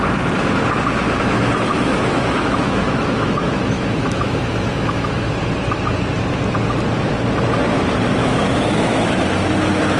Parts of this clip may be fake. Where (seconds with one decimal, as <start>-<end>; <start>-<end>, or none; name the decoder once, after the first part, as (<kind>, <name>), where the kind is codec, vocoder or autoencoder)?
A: 1.7-5.3 (autoencoder, DAC-VAE); 8.2-9.2